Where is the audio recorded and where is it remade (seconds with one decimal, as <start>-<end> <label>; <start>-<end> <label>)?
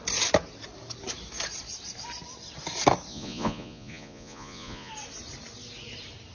0.0-3.1 recorded; 3.1-4.9 remade; 4.9-6.3 recorded